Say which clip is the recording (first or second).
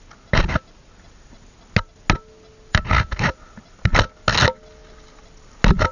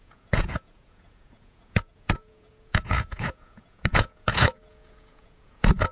first